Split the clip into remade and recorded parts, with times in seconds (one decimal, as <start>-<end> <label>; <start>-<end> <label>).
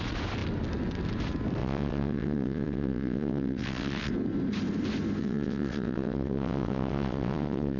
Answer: 0.0-1.6 recorded; 1.6-4.1 remade; 4.1-5.2 recorded; 5.2-7.8 remade